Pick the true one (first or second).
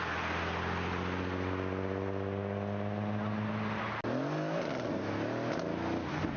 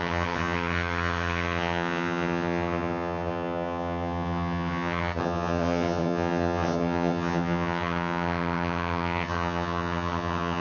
first